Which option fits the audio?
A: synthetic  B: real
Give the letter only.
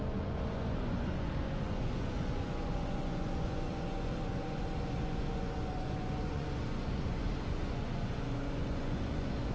A